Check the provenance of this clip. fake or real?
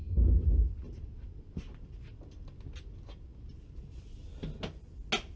real